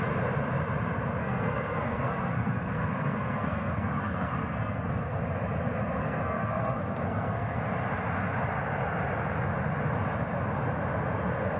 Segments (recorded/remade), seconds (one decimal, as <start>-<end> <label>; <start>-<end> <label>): 0.0-1.2 recorded; 1.2-5.2 remade; 5.2-6.0 recorded; 6.0-7.6 remade; 7.6-11.6 recorded